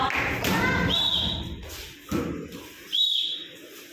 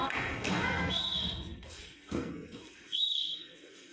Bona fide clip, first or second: first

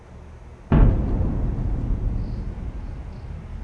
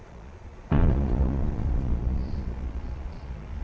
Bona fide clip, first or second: first